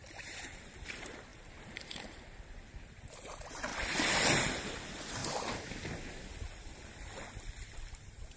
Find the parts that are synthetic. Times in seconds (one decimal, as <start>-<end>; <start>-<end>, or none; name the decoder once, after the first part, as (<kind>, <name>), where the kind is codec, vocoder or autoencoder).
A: 0.0-3.7 (vocoder, BigVGAN v2); 4.4-5.2; 8.0-8.4